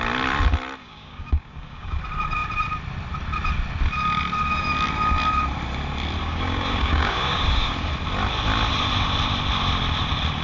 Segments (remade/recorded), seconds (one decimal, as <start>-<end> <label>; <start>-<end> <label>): 0.0-0.8 recorded; 0.8-2.0 remade; 2.0-6.2 recorded; 6.2-7.7 remade; 7.7-10.4 recorded